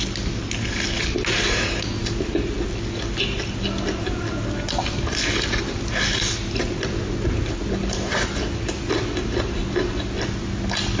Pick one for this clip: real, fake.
real